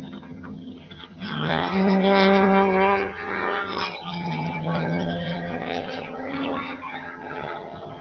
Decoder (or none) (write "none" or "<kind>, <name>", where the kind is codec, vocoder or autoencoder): vocoder, HiFi-GAN